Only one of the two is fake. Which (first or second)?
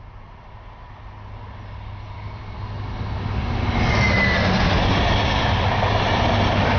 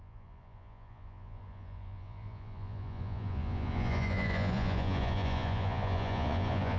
second